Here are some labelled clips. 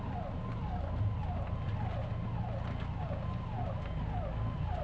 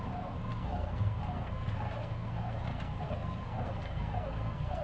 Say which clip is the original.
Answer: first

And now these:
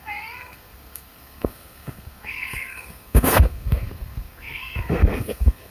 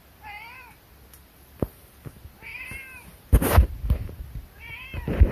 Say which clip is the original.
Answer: second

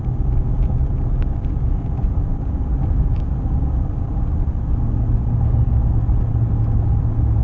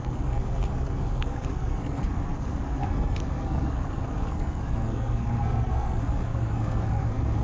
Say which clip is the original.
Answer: first